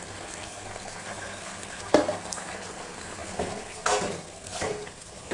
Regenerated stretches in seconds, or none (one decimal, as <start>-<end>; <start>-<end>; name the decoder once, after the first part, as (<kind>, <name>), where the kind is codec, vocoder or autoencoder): 0.0-5.3 (codec, SNAC)